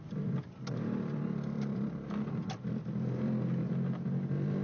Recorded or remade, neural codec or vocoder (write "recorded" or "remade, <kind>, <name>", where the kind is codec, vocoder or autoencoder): remade, vocoder, BigVGAN v2